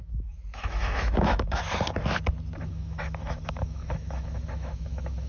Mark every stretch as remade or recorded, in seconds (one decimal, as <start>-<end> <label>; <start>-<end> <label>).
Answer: 0.0-1.6 remade; 1.6-2.6 recorded; 2.6-5.3 remade